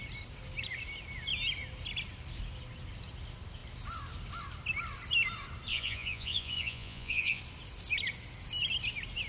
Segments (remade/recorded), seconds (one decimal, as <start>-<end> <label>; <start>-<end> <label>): 0.0-5.7 recorded; 5.7-7.4 remade; 7.4-9.3 recorded